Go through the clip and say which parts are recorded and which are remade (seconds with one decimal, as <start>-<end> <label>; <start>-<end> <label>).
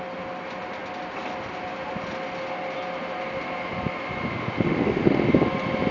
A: 0.0-4.3 recorded; 4.3-5.3 remade; 5.3-5.9 recorded